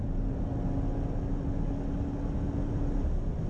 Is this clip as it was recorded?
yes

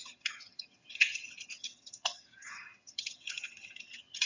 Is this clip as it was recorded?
no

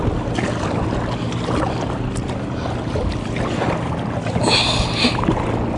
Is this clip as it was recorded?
yes